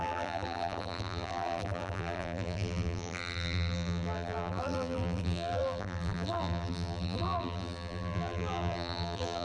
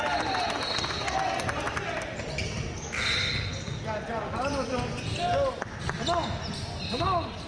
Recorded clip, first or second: second